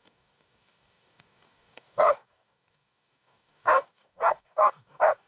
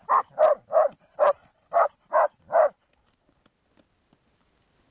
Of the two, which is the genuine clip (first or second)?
second